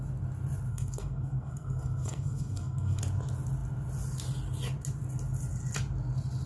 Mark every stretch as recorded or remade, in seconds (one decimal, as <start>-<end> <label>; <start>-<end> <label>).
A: 0.0-0.7 recorded; 0.7-3.0 remade; 3.0-6.5 recorded

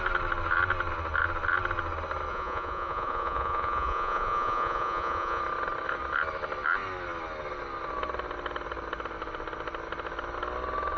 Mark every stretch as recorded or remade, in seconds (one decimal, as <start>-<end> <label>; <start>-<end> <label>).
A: 0.0-2.3 recorded; 2.3-5.4 remade; 5.4-11.0 recorded